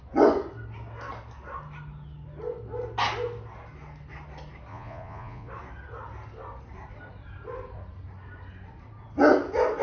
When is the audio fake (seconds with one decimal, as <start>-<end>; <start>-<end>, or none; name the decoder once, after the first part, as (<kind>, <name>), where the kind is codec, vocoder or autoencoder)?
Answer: 4.7-5.5 (vocoder, Vocos)